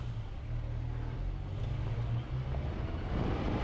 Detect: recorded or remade recorded